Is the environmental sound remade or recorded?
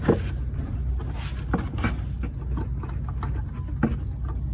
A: recorded